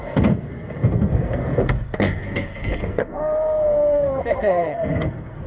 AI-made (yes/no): yes